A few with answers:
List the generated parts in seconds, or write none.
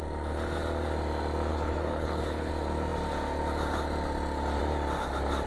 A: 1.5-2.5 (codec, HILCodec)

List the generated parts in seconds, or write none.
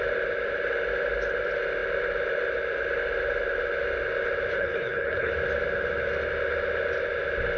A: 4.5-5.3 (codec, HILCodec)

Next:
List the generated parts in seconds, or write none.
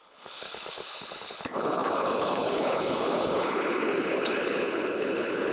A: 0.0-5.5 (codec, HILCodec)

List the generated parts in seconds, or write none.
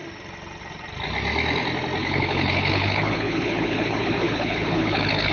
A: 2.0-5.3 (codec, HILCodec)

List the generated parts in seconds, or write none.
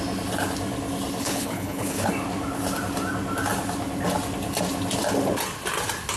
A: 1.2-2.1 (codec, HILCodec)